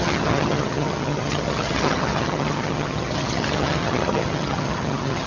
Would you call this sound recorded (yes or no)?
no